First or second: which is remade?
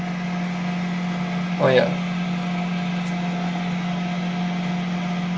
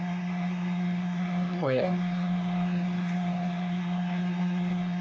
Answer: second